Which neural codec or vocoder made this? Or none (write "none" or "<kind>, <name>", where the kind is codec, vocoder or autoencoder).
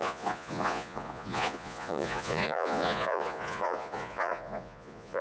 vocoder, Vocos